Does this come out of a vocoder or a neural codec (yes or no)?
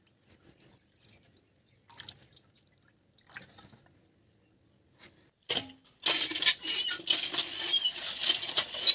no